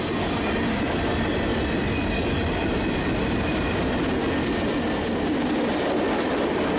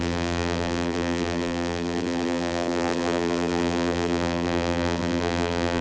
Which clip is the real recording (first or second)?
first